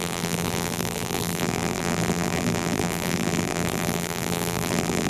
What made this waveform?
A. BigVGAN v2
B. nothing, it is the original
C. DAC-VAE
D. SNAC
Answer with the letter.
A